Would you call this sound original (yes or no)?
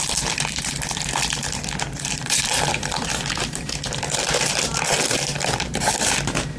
no